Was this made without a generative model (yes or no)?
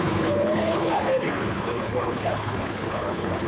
no